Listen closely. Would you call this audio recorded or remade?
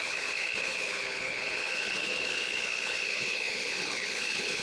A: remade